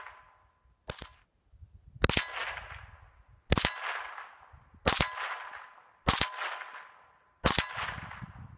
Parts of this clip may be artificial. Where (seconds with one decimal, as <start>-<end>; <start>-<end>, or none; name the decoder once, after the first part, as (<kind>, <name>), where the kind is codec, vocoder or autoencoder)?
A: none